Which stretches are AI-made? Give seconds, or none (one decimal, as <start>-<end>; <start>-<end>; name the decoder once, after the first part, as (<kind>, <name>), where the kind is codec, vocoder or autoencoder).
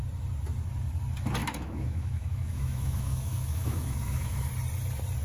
1.4-4.5 (autoencoder, DAC-VAE)